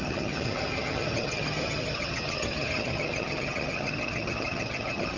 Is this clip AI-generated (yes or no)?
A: yes